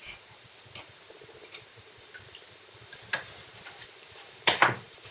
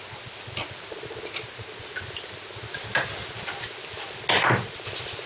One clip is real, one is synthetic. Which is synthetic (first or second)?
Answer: first